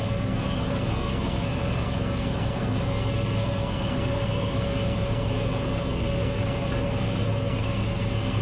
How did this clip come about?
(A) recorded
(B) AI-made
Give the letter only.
B